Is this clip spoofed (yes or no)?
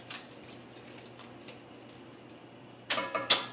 no